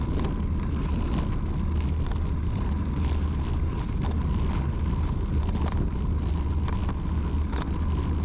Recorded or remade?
recorded